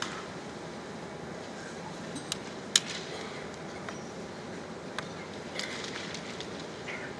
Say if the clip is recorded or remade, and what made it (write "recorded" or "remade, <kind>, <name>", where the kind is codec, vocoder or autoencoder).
recorded